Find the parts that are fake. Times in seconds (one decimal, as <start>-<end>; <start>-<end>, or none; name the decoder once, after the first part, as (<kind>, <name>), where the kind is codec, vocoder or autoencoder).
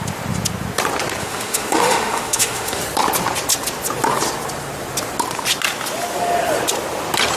1.2-2.8 (autoencoder, DAC-VAE)